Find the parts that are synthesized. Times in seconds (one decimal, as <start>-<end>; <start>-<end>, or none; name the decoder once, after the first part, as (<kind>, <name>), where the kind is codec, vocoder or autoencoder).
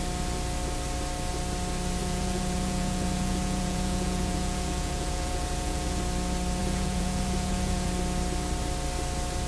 2.0-6.0 (vocoder, Vocos); 6.6-7.9